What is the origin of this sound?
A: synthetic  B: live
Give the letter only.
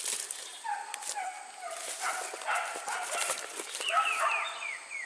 B